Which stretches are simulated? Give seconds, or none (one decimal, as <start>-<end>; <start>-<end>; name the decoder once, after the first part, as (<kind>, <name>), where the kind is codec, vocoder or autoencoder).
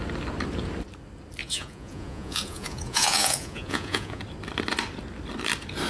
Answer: 1.4-4.2 (vocoder, Vocos)